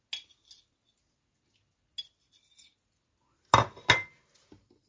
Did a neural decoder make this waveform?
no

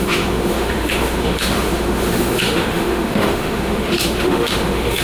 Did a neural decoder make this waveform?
yes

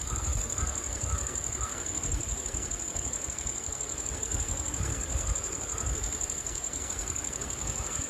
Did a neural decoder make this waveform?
yes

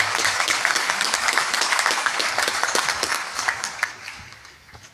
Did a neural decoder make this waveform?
yes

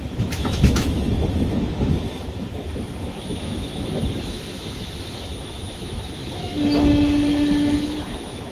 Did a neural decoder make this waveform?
yes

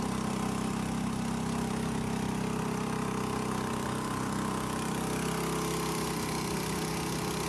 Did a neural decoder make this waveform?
no